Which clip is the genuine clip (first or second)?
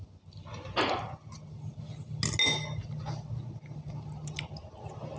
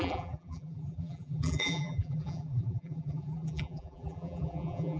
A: first